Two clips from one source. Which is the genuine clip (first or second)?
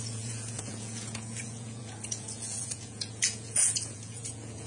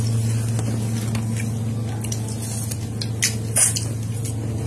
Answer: second